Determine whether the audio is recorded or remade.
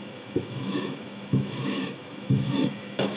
remade